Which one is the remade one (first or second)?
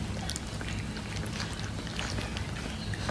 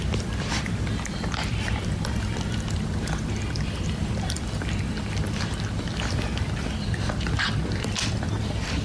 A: second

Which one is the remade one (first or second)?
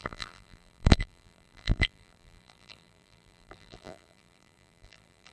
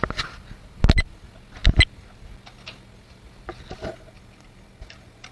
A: first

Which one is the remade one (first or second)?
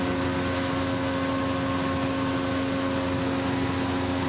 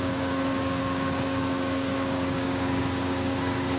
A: second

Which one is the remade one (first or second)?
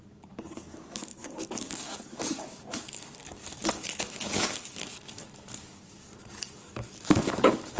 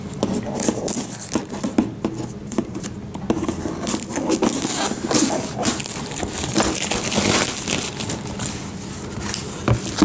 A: first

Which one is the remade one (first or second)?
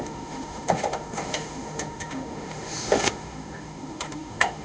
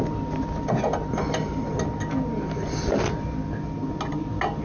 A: first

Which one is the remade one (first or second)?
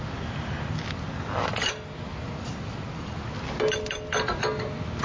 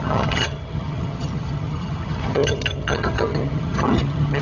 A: second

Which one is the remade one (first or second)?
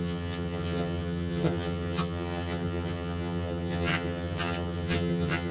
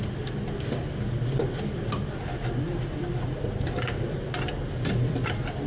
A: first